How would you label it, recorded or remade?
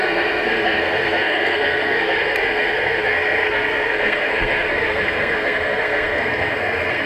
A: remade